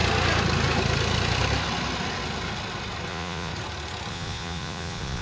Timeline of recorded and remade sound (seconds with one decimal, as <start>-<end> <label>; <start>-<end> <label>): 0.0-3.1 recorded; 3.1-3.5 remade; 3.5-4.1 recorded; 4.1-5.2 remade